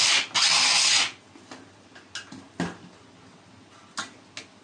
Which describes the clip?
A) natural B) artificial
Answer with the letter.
A